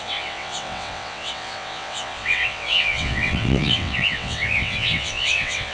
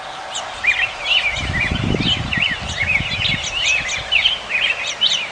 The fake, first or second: first